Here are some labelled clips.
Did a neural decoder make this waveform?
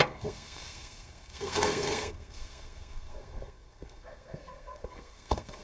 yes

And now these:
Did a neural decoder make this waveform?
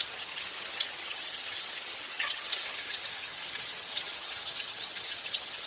yes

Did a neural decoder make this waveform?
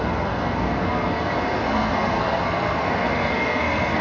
yes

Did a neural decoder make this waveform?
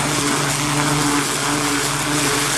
no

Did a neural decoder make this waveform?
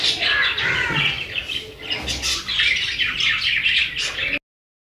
no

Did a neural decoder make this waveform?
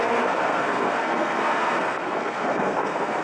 yes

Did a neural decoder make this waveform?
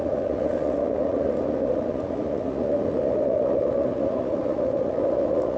yes